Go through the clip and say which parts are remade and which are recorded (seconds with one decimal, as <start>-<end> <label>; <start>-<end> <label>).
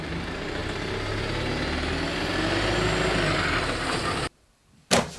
0.0-5.2 recorded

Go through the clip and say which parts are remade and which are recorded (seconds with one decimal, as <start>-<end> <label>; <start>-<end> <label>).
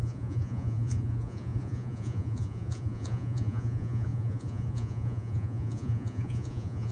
0.0-6.9 remade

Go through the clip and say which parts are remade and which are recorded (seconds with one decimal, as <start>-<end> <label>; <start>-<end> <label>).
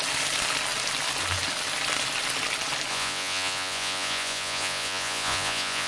0.0-2.9 recorded; 2.9-5.9 remade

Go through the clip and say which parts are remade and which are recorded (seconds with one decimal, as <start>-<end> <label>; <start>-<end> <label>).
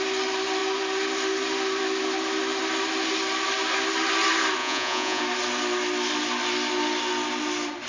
0.0-4.6 recorded; 4.6-5.2 remade; 5.2-7.9 recorded